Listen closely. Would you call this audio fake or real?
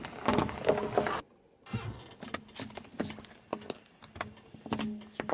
real